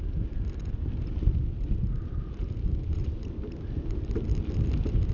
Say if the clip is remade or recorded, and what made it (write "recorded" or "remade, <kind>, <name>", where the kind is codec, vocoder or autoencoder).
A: recorded